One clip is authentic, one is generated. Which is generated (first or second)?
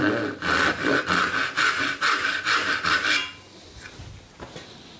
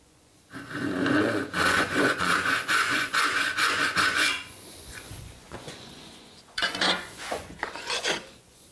second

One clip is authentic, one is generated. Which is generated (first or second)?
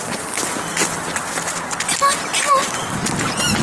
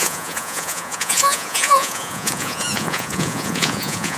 second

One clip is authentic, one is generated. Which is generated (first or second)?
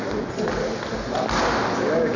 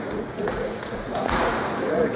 second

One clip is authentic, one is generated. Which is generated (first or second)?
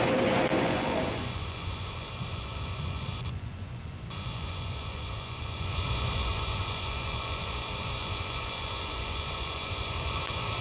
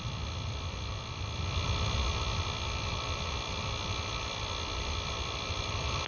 first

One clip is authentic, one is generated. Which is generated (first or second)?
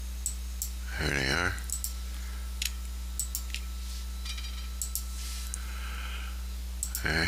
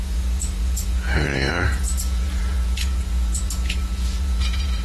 second